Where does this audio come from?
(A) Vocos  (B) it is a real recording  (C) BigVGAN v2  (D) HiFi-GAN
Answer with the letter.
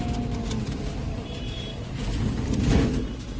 B